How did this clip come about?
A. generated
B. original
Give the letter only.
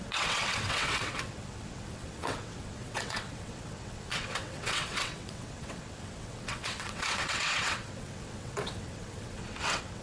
A